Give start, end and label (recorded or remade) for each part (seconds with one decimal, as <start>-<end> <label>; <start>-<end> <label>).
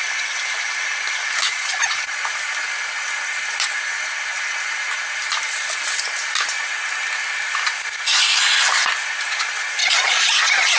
0.0-1.5 recorded; 1.5-2.2 remade; 2.2-9.8 recorded; 9.8-10.8 remade